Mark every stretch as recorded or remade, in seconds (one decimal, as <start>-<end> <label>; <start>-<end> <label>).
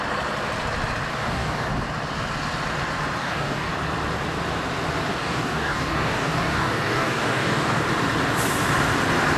0.0-1.1 recorded; 1.1-1.7 remade; 1.7-3.2 recorded; 3.2-3.7 remade; 3.7-5.1 recorded; 5.1-7.8 remade; 7.8-9.4 recorded